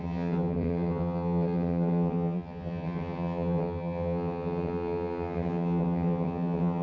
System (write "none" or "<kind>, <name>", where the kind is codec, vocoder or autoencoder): vocoder, HiFi-GAN